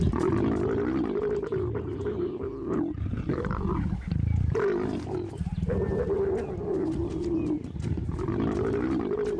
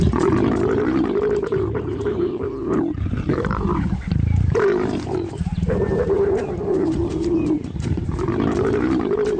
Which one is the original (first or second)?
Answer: first